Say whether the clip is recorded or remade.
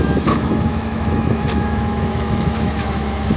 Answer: remade